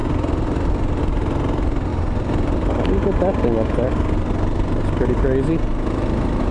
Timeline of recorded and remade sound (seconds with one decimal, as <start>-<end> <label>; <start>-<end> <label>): 0.0-1.0 remade; 1.0-1.9 recorded; 1.9-5.2 remade; 5.2-6.5 recorded